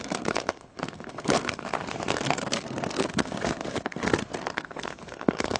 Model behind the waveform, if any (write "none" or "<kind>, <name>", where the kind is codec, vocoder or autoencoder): codec, SNAC